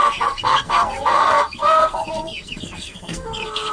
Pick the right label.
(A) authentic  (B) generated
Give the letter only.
B